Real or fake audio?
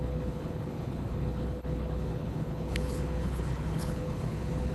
fake